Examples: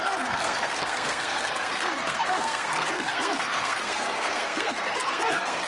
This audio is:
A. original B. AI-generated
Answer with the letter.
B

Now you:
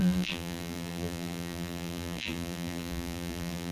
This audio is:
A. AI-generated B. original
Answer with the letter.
A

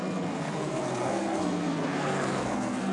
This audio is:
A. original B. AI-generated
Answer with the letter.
B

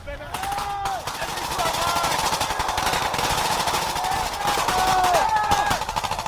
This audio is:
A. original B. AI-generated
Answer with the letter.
A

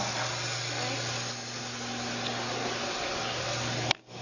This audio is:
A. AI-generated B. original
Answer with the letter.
B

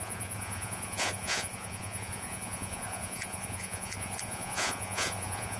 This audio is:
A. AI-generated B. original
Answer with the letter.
A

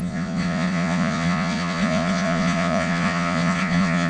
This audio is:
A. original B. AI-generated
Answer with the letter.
B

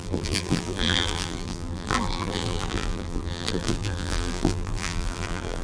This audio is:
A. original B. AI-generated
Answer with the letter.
B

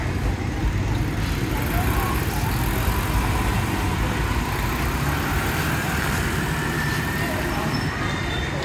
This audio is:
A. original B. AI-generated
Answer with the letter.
A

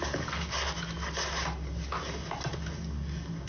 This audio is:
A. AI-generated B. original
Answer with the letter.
B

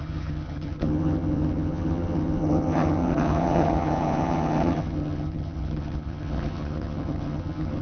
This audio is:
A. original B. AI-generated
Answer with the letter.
B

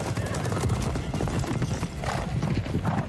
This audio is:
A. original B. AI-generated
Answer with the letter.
A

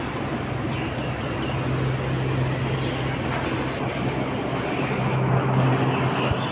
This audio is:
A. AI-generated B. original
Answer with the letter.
B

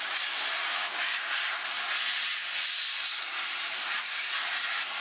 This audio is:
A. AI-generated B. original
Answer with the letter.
A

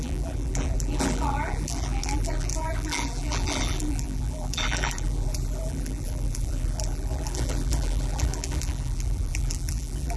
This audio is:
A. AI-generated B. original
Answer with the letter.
A